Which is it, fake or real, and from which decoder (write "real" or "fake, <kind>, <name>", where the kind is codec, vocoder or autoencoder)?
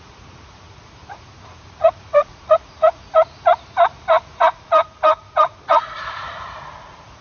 fake, vocoder, Vocos